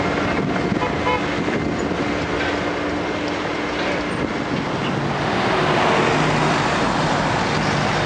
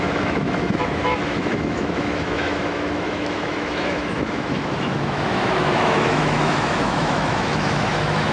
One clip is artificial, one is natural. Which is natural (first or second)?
first